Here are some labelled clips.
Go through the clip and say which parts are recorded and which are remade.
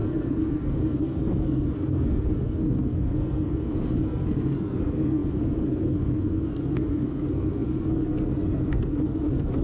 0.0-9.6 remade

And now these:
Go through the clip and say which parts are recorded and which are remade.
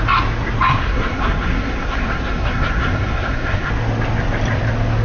0.0-0.7 recorded; 0.7-3.7 remade; 3.7-5.0 recorded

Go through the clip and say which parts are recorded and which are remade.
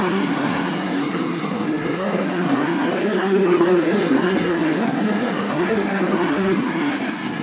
0.0-7.4 remade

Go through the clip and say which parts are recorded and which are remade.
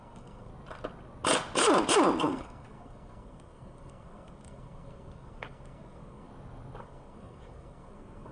0.0-0.5 remade; 0.5-2.2 recorded; 2.2-6.3 remade; 6.3-6.8 recorded; 6.8-8.3 remade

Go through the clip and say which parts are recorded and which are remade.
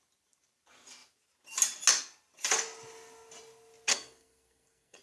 0.0-3.9 recorded; 3.9-5.0 remade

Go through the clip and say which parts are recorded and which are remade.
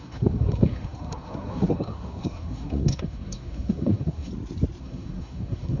0.0-4.3 remade; 4.3-4.8 recorded; 4.8-5.8 remade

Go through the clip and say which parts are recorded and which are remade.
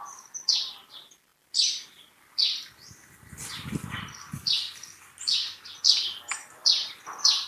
0.0-7.5 recorded